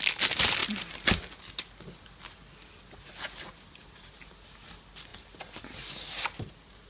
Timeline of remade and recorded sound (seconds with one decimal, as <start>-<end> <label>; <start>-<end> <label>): 0.0-6.9 recorded